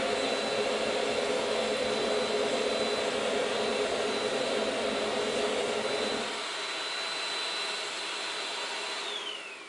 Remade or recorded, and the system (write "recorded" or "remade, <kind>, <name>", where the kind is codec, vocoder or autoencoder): recorded